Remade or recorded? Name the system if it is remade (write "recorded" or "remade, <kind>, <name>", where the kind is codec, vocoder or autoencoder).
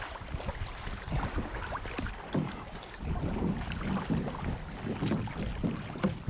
recorded